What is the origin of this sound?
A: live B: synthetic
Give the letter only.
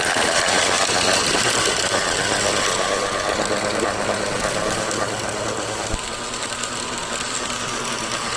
A